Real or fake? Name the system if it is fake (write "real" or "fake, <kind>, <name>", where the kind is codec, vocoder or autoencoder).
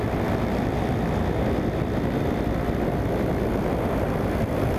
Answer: real